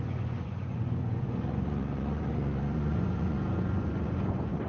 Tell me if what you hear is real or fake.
fake